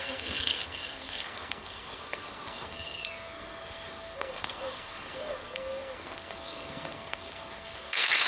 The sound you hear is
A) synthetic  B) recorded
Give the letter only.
A